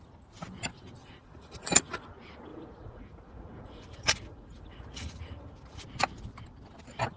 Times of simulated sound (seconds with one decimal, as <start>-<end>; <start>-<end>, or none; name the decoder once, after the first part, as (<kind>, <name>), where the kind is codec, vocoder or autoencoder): 1.0-2.0 (vocoder, Vocos); 2.5-5.8